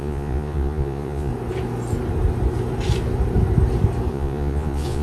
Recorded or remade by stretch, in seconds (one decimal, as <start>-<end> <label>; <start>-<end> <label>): 0.0-1.3 remade; 1.3-4.1 recorded; 4.1-5.0 remade